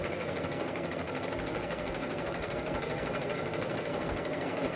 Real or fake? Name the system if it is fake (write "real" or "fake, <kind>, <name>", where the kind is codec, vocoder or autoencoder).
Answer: fake, codec, SNAC